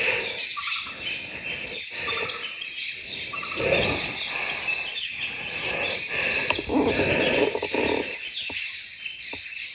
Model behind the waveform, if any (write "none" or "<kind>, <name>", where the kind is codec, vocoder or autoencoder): none